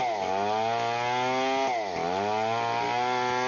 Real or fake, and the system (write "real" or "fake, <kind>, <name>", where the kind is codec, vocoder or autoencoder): real